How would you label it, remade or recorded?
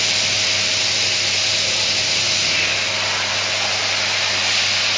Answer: recorded